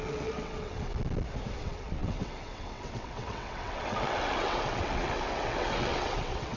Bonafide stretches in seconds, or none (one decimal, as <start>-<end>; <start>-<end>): 0.9-1.6